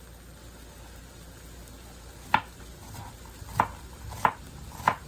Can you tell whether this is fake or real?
real